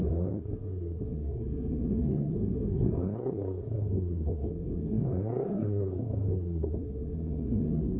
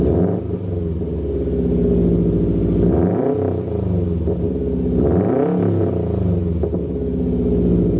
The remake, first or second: first